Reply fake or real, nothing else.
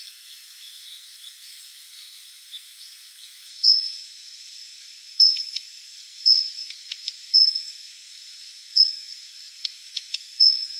fake